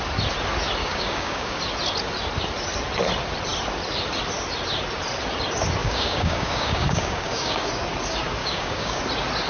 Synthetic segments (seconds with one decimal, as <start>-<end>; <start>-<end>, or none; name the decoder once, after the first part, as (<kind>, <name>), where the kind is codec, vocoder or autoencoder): 0.8-1.6 (codec, DAC); 5.8-7.7; 8.4-9.0